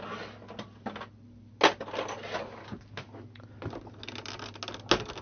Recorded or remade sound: recorded